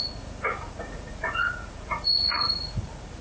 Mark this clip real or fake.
fake